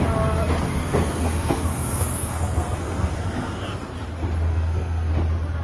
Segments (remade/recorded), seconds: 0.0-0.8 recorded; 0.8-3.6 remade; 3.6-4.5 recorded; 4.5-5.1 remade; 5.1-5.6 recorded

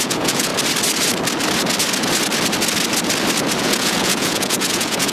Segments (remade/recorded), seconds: 0.0-0.5 remade; 0.5-3.6 recorded; 3.6-5.1 remade